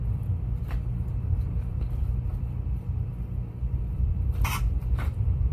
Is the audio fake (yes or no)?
yes